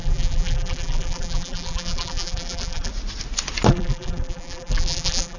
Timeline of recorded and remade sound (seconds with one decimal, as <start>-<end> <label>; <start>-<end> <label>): 0.0-2.9 remade; 2.9-3.7 recorded; 3.7-5.4 remade